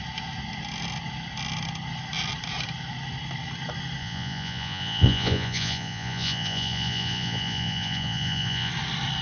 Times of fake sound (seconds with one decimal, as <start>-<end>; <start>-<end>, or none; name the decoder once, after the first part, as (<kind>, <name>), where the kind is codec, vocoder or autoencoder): 4.0-8.7 (vocoder, Vocos)